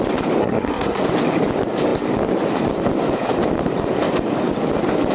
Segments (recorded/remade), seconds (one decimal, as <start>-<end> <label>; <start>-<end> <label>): 0.0-0.4 recorded; 0.4-1.0 remade; 1.0-5.1 recorded